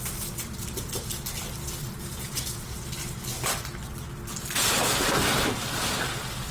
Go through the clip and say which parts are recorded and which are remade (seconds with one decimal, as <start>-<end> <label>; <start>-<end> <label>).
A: 0.0-2.1 recorded; 2.1-2.8 remade; 2.8-6.5 recorded